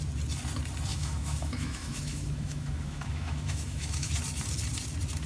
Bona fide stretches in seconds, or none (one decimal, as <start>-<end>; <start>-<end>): 0.0-0.9; 4.1-5.3